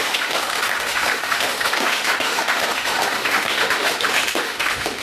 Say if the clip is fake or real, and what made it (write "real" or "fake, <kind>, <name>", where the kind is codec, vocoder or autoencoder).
fake, autoencoder, DAC-VAE